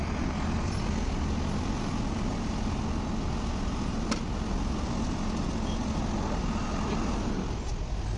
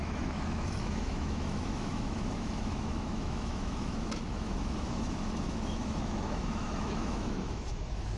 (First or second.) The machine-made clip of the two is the second